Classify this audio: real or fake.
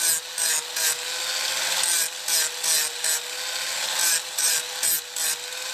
real